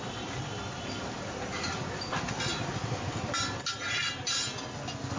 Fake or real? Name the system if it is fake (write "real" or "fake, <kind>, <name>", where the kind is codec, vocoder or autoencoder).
real